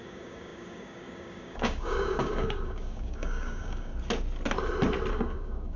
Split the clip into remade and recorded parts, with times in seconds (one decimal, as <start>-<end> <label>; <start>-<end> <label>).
0.0-3.9 remade; 3.9-5.1 recorded; 5.1-5.8 remade

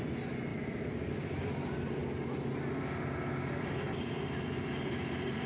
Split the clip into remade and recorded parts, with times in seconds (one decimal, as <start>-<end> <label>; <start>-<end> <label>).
0.0-2.0 remade; 2.0-3.5 recorded; 3.5-5.5 remade